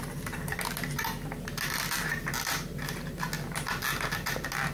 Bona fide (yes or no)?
yes